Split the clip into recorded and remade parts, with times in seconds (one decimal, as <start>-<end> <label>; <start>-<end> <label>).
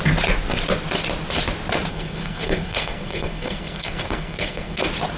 0.0-1.9 recorded; 1.9-4.8 remade; 4.8-5.2 recorded